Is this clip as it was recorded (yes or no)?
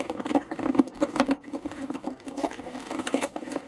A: no